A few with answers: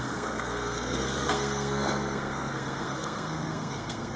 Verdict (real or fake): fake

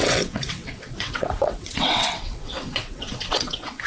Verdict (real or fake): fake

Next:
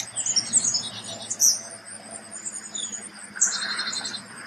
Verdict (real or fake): real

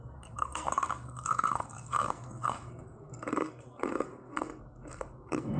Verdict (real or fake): fake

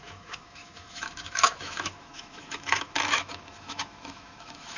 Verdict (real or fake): fake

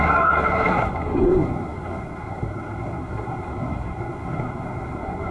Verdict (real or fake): fake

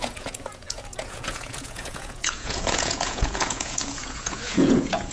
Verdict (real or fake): fake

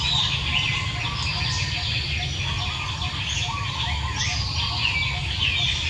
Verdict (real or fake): real